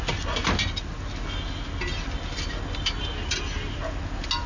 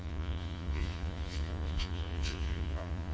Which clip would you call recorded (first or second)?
first